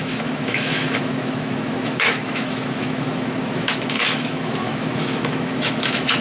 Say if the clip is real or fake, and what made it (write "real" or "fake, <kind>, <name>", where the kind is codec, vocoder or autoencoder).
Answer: fake, autoencoder, DAC-VAE